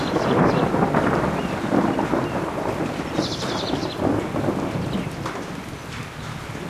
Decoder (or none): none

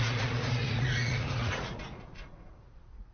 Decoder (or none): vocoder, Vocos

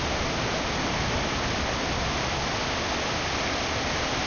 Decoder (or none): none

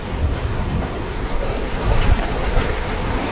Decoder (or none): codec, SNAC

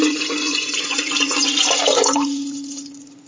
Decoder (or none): vocoder, Vocos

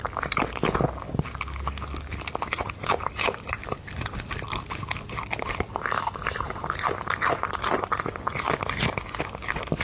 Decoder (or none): none